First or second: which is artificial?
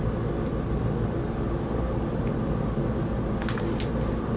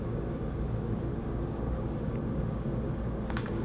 second